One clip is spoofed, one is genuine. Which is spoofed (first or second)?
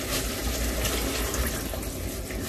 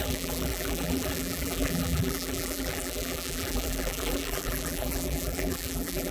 second